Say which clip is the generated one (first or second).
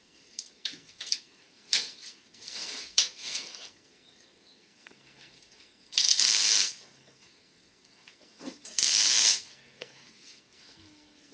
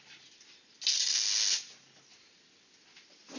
first